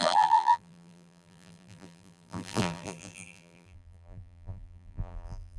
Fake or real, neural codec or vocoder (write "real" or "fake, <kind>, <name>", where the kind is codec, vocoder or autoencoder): fake, vocoder, BigVGAN v2